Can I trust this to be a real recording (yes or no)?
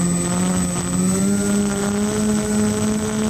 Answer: yes